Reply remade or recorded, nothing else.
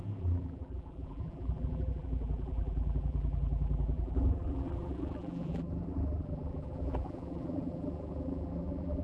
remade